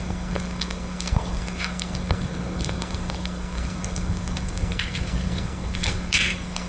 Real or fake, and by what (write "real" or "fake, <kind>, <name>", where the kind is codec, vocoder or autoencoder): fake, codec, SNAC